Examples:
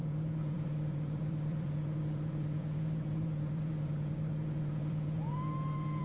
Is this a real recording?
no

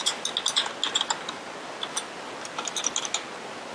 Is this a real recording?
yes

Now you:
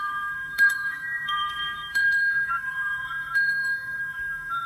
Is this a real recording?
no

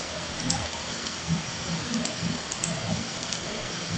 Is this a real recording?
no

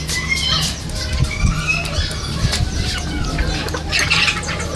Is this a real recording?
yes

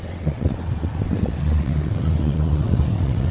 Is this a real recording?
no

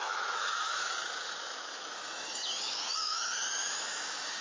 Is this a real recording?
no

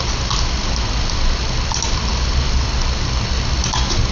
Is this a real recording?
yes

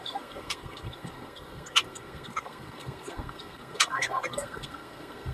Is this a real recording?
no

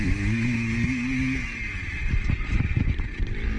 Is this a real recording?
yes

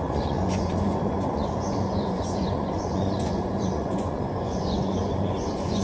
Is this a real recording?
no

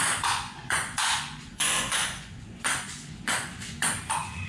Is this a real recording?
no